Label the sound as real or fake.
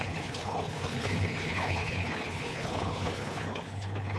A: fake